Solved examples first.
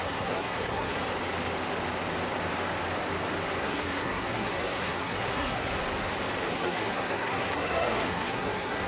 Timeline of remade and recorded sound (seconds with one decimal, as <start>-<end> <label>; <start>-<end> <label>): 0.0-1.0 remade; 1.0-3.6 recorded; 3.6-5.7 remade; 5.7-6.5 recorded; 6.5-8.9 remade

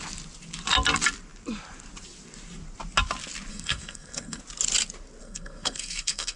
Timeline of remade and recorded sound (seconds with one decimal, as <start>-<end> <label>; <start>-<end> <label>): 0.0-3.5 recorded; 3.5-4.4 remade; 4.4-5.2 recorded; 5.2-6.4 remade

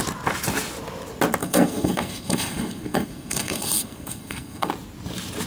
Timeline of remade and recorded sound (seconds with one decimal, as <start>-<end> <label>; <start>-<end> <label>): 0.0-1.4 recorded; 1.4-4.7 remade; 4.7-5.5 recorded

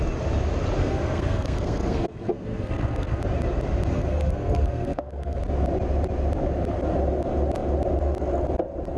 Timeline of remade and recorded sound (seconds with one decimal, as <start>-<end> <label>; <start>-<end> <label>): 0.0-0.8 recorded; 0.8-3.2 remade; 3.2-3.9 recorded; 3.9-5.4 remade; 5.4-9.0 recorded